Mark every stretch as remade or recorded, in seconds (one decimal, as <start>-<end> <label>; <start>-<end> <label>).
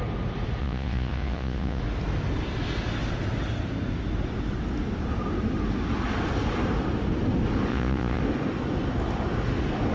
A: 0.0-0.6 recorded; 0.6-1.8 remade; 1.8-7.7 recorded; 7.7-8.2 remade; 8.2-9.9 recorded